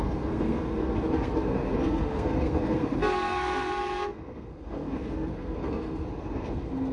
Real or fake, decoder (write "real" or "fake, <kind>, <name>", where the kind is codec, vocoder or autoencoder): fake, codec, SNAC